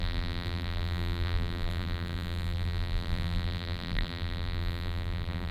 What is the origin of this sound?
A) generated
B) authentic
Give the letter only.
A